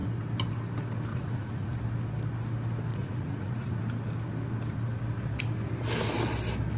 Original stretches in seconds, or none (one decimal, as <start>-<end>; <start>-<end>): 0.0-1.1; 1.8-2.9; 3.8-6.8